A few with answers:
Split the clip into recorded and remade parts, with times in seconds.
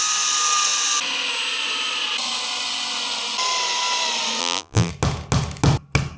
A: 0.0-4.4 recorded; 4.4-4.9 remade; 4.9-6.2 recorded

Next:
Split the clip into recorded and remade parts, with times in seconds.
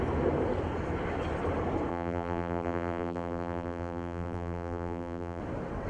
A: 0.0-1.9 recorded; 1.9-5.4 remade; 5.4-5.9 recorded